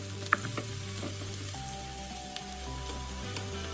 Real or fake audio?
real